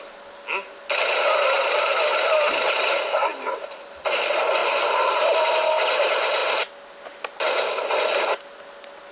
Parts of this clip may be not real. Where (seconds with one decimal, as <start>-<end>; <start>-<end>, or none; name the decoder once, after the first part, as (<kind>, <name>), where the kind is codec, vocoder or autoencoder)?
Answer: 1.9-2.5 (vocoder, BigVGAN v2)